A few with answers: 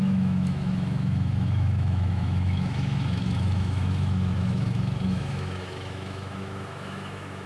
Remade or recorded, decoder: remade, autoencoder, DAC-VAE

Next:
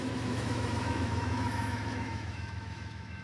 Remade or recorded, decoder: remade, autoencoder, DAC-VAE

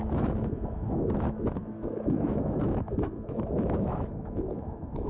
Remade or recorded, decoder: remade, autoencoder, DAC-VAE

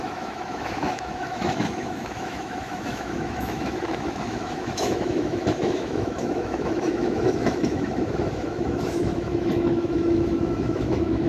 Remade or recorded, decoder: remade, autoencoder, DAC-VAE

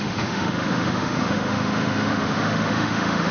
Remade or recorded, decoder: remade, autoencoder, DAC-VAE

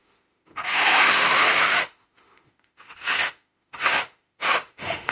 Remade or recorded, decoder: remade, autoencoder, DAC-VAE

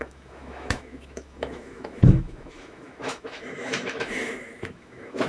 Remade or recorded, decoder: remade, autoencoder, DAC-VAE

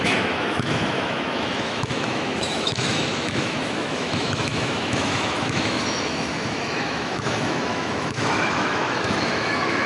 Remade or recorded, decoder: remade, autoencoder, DAC-VAE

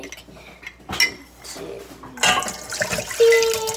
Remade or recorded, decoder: recorded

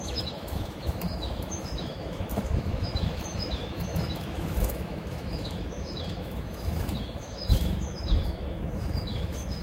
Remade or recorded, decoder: remade, autoencoder, DAC-VAE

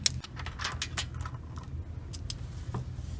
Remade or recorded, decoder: recorded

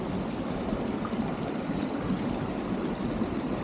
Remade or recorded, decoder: recorded